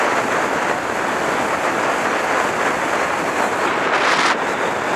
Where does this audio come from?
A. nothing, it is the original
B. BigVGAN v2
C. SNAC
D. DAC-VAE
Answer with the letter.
A